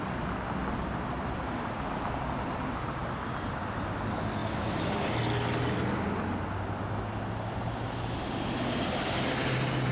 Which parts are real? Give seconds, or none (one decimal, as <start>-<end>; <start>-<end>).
0.0-9.9